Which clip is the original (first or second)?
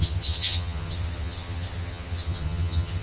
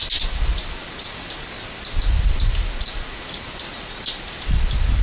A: second